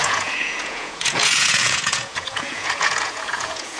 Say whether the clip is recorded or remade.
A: remade